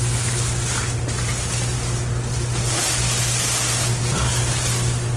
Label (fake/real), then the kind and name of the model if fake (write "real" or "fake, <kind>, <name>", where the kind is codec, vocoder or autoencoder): real